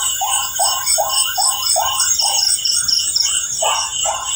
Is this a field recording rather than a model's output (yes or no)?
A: no